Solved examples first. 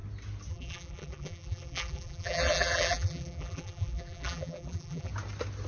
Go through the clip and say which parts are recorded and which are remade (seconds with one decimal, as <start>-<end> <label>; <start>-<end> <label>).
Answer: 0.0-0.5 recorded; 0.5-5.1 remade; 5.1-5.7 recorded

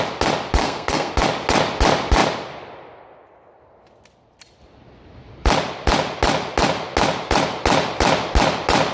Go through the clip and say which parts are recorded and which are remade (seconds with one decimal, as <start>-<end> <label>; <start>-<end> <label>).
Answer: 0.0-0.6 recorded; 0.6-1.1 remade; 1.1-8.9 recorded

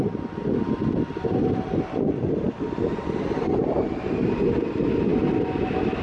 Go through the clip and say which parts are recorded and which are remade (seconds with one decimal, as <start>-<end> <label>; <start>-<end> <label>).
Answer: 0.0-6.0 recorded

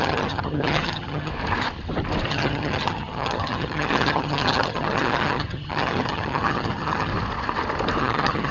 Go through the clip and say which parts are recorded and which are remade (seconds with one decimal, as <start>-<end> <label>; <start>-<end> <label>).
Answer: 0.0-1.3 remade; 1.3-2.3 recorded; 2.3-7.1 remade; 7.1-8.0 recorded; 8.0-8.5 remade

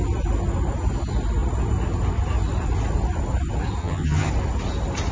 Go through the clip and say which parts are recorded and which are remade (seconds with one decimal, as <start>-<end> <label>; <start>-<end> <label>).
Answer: 0.0-3.8 recorded; 3.8-4.3 remade; 4.3-5.1 recorded

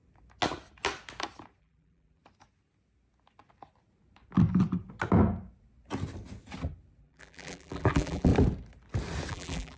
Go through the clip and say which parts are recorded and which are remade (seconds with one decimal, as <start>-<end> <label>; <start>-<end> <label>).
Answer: 0.0-1.6 recorded; 1.6-2.2 remade; 2.2-7.0 recorded; 7.0-8.3 remade; 8.3-9.3 recorded; 9.3-9.8 remade